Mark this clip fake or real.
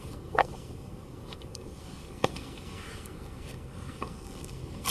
fake